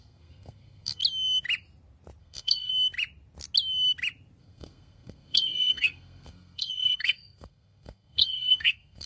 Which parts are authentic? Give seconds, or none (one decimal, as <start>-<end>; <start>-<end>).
1.0-2.2; 2.7-4.4